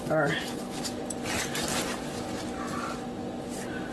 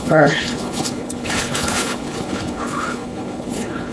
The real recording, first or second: first